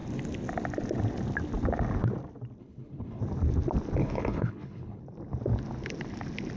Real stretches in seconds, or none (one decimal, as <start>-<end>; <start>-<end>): 0.0-2.6; 3.2-4.0; 5.0-6.6